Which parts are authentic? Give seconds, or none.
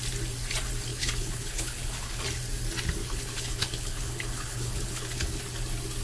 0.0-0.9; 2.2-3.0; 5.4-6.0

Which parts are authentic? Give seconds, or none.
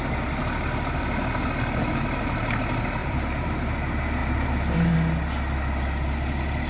0.0-3.0; 3.7-4.2; 4.9-6.7